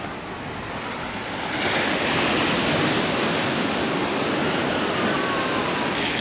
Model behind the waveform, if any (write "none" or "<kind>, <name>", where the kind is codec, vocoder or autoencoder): none